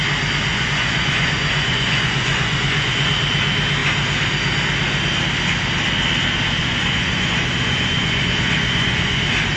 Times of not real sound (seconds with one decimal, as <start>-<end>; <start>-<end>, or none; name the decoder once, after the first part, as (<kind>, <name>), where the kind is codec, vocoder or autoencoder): 0.5-3.1 (vocoder, Vocos); 6.6-9.2

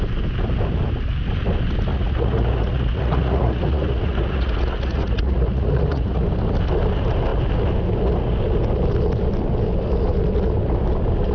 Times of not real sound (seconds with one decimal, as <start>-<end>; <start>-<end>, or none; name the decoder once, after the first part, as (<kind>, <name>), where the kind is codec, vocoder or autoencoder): 1.9-6.2 (vocoder, Vocos)